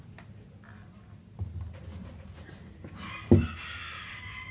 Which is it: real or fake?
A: real